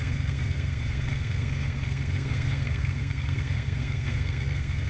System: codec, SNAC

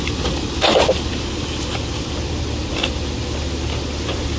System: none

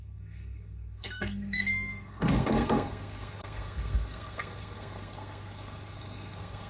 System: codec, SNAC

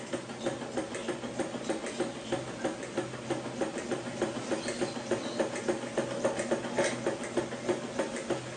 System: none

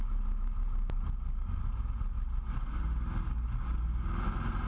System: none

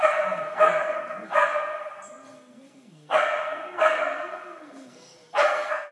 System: codec, SNAC